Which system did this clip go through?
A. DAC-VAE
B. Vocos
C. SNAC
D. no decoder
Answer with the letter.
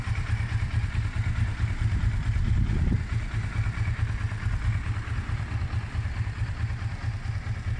D